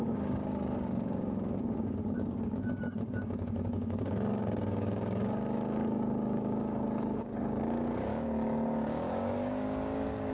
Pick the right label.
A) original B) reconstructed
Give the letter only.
B